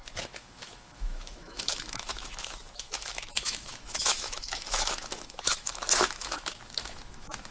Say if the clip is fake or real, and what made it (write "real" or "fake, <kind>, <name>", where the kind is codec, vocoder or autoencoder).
fake, autoencoder, DAC-VAE